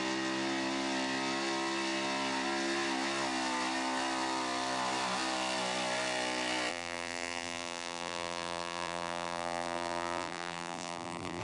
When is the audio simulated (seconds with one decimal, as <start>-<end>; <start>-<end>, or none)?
6.7-11.4